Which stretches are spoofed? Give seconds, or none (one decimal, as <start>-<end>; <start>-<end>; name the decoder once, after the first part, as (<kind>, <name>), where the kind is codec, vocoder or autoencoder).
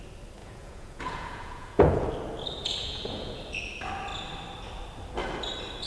0.4-2.1 (vocoder, Vocos); 2.8-3.4